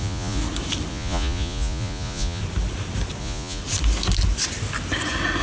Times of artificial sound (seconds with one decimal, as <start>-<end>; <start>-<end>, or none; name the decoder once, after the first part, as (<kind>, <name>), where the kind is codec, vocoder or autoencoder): 0.0-0.4 (vocoder, Vocos); 0.9-2.4; 3.2-3.6